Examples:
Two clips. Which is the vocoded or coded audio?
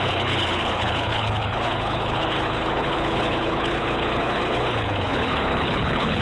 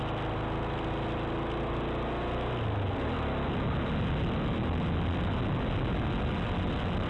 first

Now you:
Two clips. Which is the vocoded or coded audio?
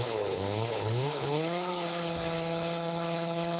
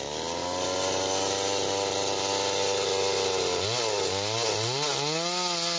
first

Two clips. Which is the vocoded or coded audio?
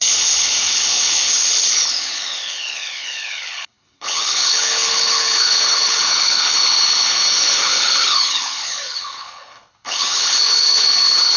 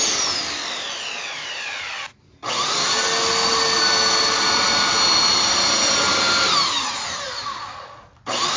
first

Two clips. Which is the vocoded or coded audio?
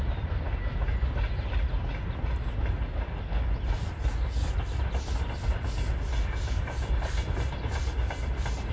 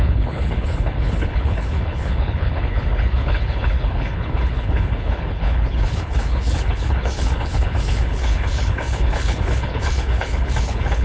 second